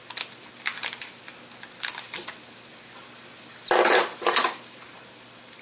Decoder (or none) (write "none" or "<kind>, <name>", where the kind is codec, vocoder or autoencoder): none